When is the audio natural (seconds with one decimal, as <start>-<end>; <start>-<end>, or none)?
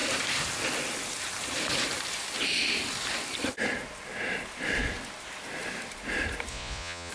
0.0-6.5